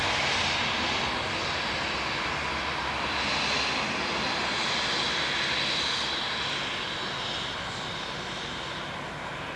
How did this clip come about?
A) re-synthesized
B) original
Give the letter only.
B